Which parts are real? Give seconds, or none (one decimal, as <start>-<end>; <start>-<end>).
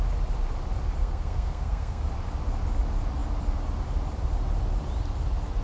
0.0-1.0; 2.0-5.6